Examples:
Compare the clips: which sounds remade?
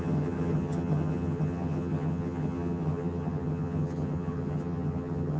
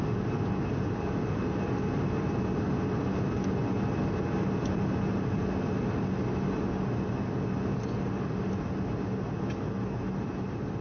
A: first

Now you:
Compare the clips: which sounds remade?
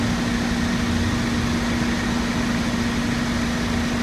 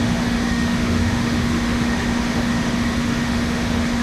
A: second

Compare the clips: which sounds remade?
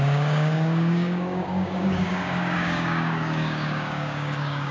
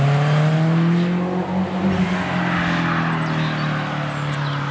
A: first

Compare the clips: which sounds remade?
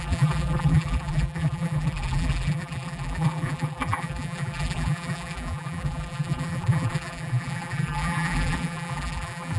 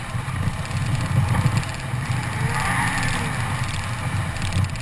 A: first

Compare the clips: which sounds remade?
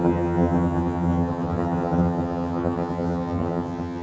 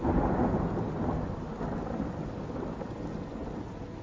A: first